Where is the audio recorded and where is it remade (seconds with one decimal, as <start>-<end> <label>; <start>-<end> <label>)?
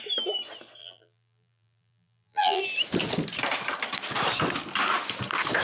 0.0-0.8 recorded; 0.8-2.6 remade; 2.6-5.6 recorded